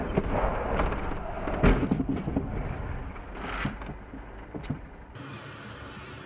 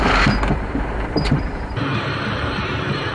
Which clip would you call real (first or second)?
first